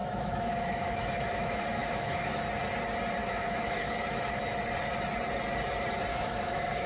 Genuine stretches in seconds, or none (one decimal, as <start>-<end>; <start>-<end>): 2.4-3.2; 4.4-6.1